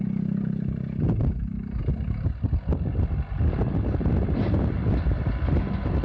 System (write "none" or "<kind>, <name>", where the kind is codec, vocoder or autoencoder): none